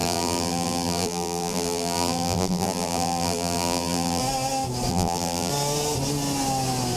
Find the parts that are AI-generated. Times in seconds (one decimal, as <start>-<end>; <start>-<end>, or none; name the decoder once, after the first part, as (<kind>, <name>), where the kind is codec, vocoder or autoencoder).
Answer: 0.0-4.2 (vocoder, BigVGAN v2); 4.9-5.5